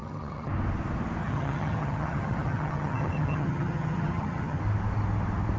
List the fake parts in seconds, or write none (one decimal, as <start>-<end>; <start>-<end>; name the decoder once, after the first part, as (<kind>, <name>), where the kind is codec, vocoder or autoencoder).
0.0-0.5 (vocoder, HiFi-GAN); 1.2-4.6